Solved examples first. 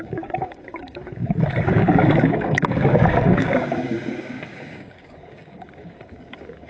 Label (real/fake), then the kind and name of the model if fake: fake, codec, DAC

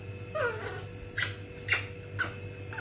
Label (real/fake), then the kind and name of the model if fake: real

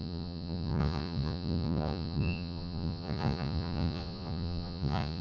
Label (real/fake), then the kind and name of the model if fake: fake, vocoder, Vocos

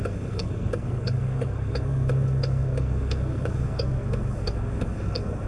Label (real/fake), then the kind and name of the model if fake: fake, codec, SNAC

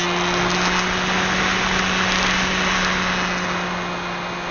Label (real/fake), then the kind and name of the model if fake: real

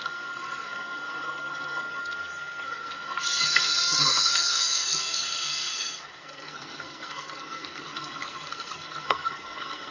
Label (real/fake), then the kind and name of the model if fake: fake, codec, SNAC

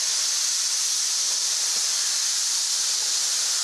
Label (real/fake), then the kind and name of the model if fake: real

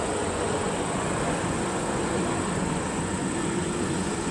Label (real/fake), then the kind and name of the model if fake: fake, vocoder, Vocos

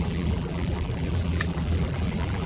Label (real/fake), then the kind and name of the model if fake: fake, vocoder, BigVGAN v2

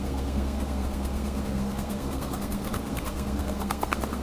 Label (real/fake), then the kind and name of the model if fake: fake, codec, SNAC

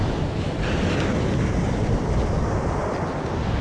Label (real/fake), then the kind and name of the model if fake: real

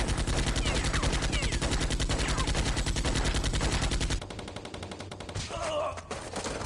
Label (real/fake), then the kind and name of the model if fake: real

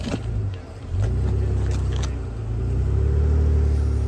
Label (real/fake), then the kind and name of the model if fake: real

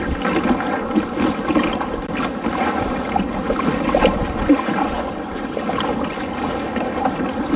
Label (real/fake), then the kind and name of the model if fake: real